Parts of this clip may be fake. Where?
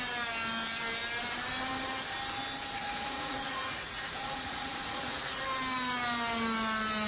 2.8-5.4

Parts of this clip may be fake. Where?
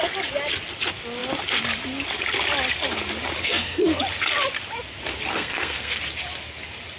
3.4-4.0; 5.3-6.0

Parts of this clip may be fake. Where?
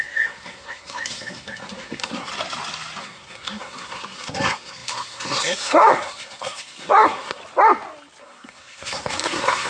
0.0-2.3; 3.0-7.4; 8.2-9.7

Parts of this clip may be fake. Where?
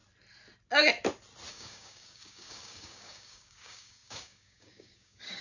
1.5-5.4